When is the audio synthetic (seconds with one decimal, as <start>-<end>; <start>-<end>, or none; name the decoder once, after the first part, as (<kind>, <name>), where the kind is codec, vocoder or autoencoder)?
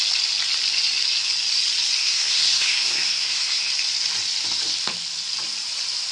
2.0-3.6 (codec, SNAC)